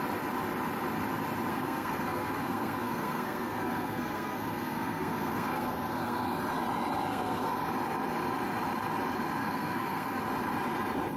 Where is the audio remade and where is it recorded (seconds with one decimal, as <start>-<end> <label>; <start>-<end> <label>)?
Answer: 0.0-1.5 recorded; 1.5-6.4 remade; 6.4-7.1 recorded; 7.1-7.7 remade; 7.7-9.4 recorded; 9.4-10.2 remade; 10.2-11.2 recorded